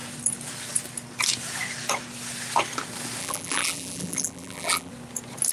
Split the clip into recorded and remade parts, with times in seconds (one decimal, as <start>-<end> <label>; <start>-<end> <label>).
0.0-3.2 recorded; 3.2-4.9 remade; 4.9-5.5 recorded